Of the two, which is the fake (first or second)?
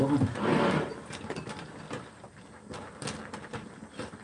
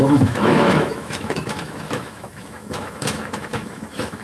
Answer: second